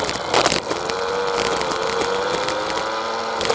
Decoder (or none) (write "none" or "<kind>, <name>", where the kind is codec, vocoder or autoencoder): none